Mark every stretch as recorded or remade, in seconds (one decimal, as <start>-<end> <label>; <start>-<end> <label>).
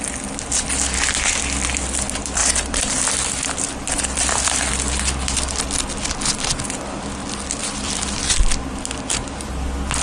0.0-2.4 recorded; 2.4-4.7 remade; 4.7-7.6 recorded; 7.6-8.5 remade; 8.5-10.0 recorded